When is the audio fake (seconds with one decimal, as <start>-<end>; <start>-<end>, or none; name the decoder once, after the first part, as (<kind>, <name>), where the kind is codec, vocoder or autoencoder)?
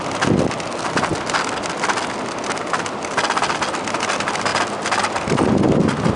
none